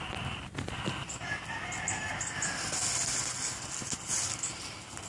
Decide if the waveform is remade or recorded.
recorded